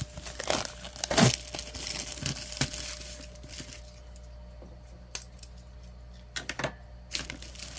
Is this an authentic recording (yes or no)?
yes